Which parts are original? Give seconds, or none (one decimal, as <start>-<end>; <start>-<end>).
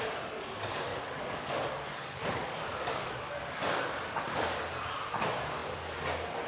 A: 0.0-0.9; 4.4-6.5